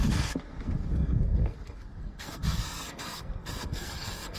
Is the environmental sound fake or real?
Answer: fake